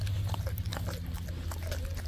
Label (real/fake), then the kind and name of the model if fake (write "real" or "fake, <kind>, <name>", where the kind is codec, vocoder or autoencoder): real